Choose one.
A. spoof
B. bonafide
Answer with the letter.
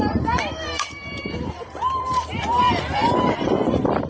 A